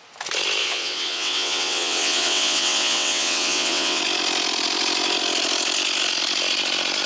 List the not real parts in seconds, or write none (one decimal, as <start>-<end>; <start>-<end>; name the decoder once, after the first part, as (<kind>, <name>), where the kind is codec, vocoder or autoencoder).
0.6-4.0 (vocoder, WaveNeXt)